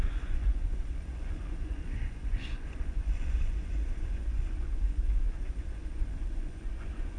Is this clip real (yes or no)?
no